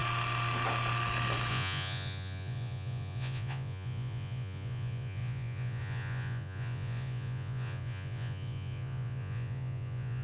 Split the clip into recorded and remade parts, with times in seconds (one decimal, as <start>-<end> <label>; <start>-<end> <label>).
0.0-1.5 recorded; 1.5-10.2 remade